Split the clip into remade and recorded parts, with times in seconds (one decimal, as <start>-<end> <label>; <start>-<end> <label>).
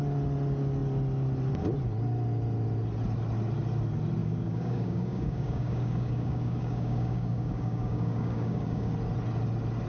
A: 0.0-4.2 recorded; 4.2-8.9 remade; 8.9-9.9 recorded